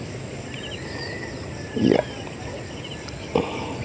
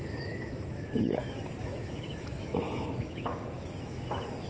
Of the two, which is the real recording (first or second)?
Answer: first